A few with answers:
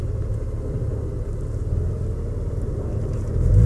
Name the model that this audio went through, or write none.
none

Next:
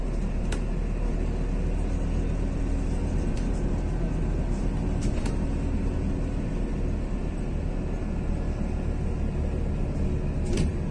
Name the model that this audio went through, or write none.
none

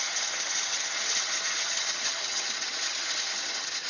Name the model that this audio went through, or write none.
vocoder, HiFi-GAN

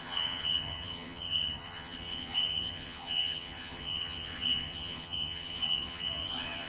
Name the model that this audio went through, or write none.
vocoder, HiFi-GAN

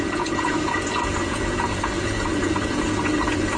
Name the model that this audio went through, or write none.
vocoder, Vocos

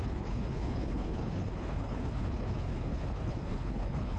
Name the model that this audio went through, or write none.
codec, HILCodec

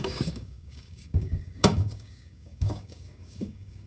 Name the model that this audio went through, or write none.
codec, DAC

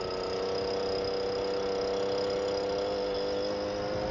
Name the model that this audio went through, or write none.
none